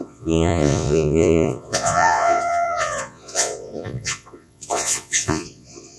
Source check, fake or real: fake